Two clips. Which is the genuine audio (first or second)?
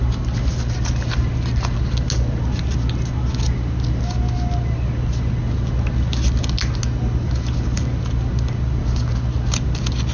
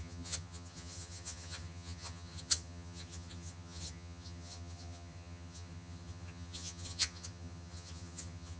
first